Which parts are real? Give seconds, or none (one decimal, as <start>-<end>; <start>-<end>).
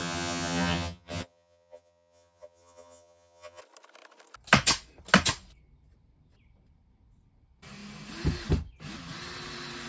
3.6-9.9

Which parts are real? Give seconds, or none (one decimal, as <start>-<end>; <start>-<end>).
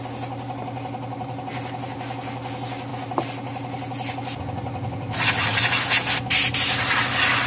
0.0-7.5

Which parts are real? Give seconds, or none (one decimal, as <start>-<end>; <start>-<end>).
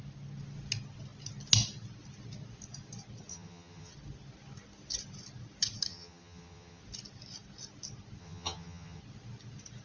0.0-3.3; 3.9-5.9; 6.8-8.2; 9.0-9.8